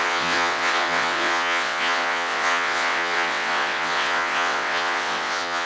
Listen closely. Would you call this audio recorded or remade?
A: remade